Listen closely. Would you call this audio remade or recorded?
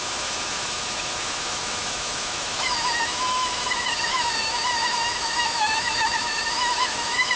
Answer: remade